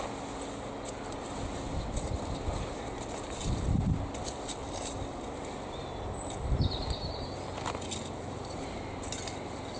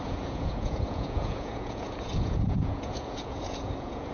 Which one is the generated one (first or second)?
second